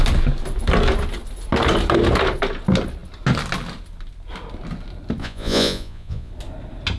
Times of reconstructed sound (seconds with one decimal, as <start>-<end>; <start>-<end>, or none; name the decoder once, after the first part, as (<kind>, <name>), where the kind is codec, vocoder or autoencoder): 5.2-6.3 (vocoder, Vocos)